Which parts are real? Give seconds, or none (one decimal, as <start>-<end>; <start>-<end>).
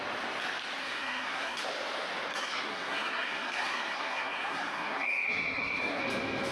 0.0-0.8; 1.6-2.3; 6.0-6.5